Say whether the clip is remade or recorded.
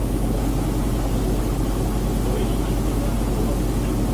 recorded